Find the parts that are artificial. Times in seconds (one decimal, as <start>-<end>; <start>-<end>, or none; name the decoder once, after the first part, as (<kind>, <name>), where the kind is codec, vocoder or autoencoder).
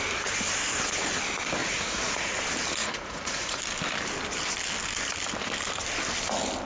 1.6-2.4 (vocoder, Vocos); 2.8-3.6